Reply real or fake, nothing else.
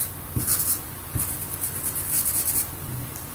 real